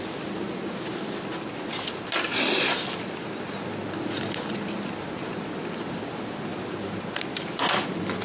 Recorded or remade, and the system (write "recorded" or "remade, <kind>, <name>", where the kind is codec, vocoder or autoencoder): recorded